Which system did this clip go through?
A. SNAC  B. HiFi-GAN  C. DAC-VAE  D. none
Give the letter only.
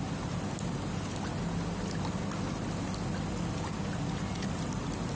D